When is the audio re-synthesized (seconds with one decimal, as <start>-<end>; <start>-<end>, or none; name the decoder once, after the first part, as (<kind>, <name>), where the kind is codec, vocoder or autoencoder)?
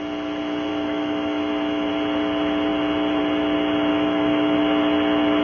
0.7-1.9 (autoencoder, DAC-VAE); 3.9-4.6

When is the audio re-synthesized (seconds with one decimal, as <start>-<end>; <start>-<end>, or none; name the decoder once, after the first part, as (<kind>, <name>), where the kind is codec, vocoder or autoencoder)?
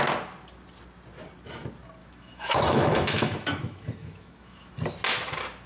2.0-4.7 (autoencoder, DAC-VAE)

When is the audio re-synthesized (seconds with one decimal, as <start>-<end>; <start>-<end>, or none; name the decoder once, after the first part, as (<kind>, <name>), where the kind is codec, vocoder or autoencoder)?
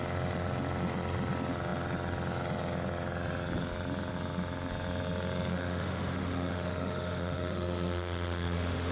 5.5-8.9 (autoencoder, DAC-VAE)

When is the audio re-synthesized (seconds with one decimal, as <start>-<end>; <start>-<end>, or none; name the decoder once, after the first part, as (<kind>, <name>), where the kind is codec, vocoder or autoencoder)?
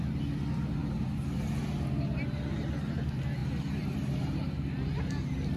none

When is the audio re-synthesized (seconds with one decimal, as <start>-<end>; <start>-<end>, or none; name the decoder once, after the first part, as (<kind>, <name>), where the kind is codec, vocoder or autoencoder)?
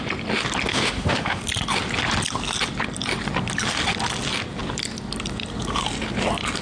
0.7-1.4 (autoencoder, DAC-VAE)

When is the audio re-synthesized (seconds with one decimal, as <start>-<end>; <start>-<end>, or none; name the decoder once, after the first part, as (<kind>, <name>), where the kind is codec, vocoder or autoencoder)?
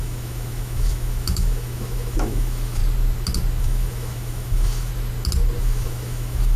0.0-2.8 (autoencoder, DAC-VAE); 3.6-4.9; 5.6-6.6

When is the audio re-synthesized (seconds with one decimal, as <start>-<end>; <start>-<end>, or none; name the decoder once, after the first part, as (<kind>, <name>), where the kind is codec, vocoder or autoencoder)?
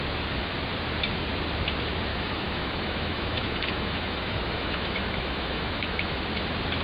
2.1-6.2 (autoencoder, DAC-VAE)